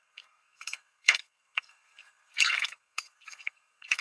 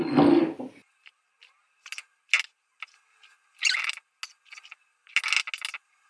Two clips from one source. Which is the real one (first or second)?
second